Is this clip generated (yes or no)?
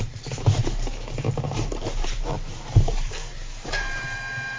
yes